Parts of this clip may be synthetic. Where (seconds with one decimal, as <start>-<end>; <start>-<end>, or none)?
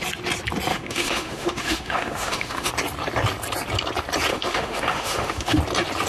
0.7-2.7; 4.3-5.6